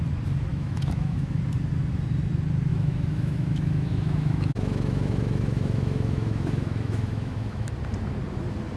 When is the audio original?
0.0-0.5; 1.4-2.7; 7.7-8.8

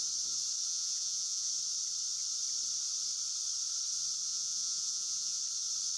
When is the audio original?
0.0-0.7; 1.5-4.3; 5.4-6.0

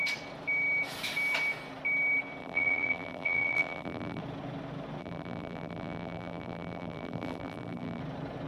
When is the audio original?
0.0-2.4; 4.2-5.0; 8.0-8.5

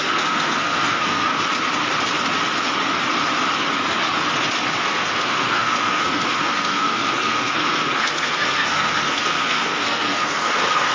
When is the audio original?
1.3-4.8

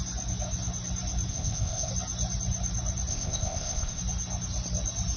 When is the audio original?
0.0-1.3; 1.9-3.1; 4.0-5.2

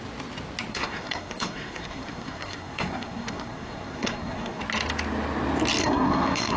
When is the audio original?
0.0-0.7; 4.6-5.8